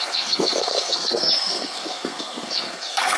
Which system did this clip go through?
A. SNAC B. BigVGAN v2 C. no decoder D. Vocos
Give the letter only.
A